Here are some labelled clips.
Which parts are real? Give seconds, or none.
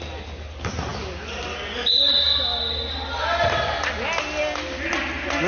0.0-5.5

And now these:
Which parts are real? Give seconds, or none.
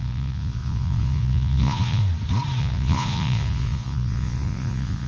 2.0-2.6